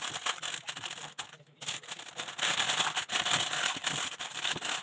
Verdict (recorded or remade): recorded